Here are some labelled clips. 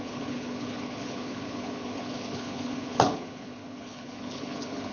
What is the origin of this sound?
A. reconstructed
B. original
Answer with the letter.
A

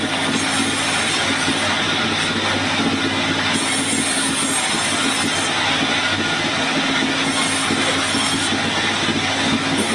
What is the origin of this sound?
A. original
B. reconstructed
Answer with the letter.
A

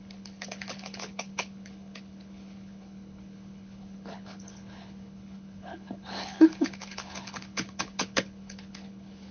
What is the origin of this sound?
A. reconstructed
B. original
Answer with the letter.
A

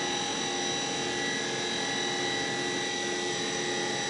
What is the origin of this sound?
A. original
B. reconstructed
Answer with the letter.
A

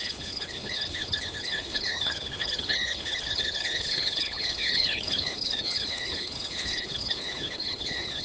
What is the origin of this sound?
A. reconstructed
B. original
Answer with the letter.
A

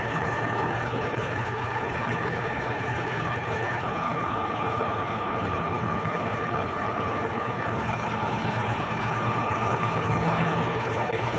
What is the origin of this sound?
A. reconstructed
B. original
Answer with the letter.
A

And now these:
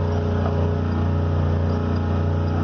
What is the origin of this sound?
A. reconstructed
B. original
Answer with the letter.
B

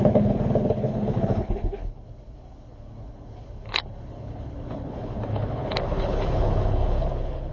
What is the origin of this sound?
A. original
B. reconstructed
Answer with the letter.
B